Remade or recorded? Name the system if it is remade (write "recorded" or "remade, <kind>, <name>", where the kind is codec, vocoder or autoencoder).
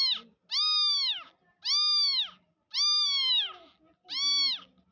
recorded